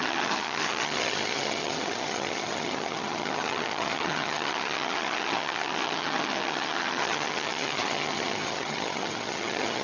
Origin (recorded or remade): remade